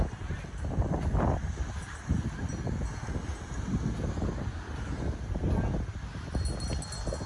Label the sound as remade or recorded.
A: recorded